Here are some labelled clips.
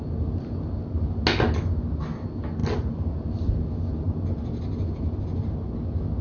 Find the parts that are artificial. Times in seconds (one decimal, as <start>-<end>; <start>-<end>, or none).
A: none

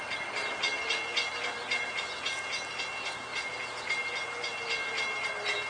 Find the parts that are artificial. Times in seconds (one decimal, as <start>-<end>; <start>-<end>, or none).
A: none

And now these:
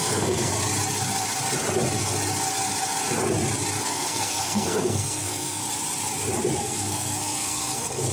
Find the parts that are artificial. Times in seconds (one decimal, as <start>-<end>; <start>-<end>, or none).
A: 0.0-0.5; 3.8-5.6; 6.6-8.1